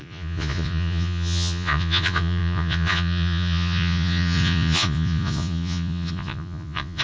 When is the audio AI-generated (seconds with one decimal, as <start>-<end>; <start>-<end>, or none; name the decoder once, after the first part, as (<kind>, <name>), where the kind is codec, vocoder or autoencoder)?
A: 0.0-7.0 (vocoder, Vocos)